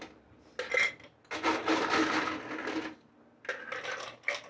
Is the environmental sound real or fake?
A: real